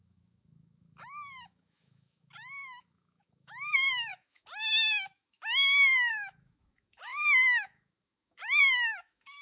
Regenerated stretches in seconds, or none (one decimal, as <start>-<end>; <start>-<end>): 0.0-9.4